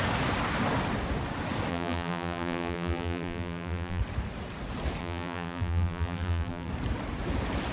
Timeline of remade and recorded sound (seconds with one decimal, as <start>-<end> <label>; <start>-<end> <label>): 0.0-1.7 recorded; 1.7-4.0 remade; 4.0-5.0 recorded; 5.0-6.7 remade; 6.7-7.7 recorded